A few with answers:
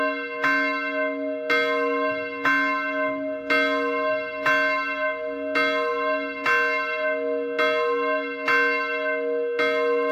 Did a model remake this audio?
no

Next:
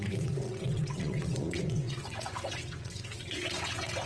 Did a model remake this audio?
yes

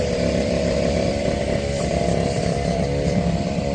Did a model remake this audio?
yes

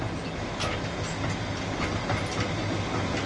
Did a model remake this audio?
no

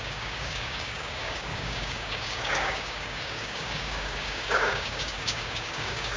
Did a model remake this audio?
yes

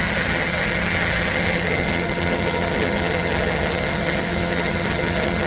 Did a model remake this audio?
yes